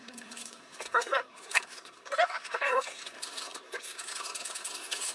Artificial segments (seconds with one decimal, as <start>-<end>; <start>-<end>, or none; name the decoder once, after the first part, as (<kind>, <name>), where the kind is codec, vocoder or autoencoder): 0.0-5.1 (codec, SNAC)